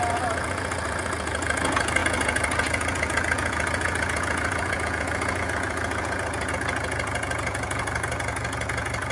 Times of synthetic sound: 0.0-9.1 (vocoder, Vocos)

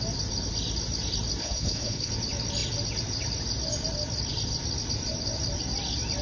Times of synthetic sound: 1.4-2.1 (codec, HILCodec)

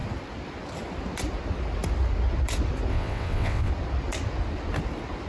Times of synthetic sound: 2.9-3.7 (vocoder, WaveNeXt)

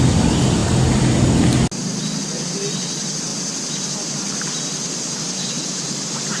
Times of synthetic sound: none

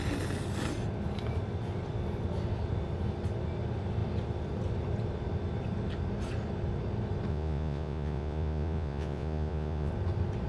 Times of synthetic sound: 7.3-9.9 (vocoder, Vocos)

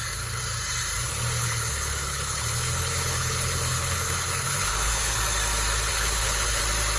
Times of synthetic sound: 1.4-5.2 (codec, HILCodec); 5.9-6.6